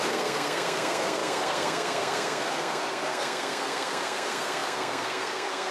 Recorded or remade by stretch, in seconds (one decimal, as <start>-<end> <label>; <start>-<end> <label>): 0.0-5.7 remade